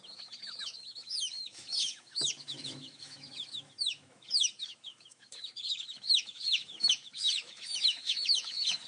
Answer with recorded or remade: remade